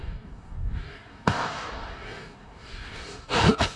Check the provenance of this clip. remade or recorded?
remade